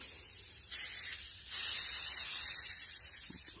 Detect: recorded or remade recorded